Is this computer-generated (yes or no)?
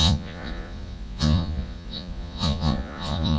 yes